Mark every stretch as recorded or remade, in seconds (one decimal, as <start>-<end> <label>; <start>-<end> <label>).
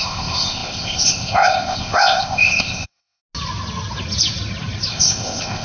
0.0-3.2 remade; 3.2-4.9 recorded; 4.9-5.6 remade